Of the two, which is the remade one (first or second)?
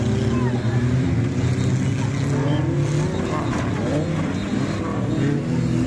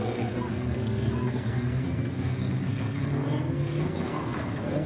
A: second